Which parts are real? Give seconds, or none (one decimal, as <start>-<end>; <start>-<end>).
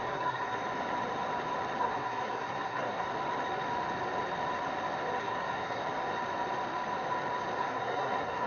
0.6-1.8; 3.1-5.2; 5.8-7.6